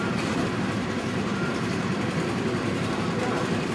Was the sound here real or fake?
fake